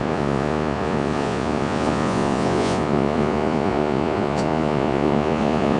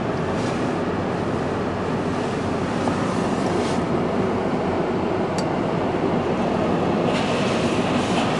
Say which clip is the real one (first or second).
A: second